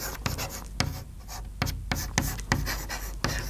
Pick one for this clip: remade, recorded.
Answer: recorded